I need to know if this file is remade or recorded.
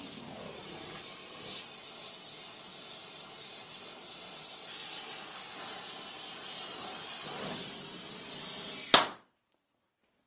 recorded